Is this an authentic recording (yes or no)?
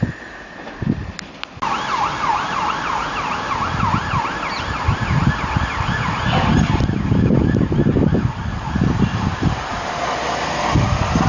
yes